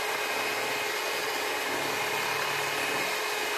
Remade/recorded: recorded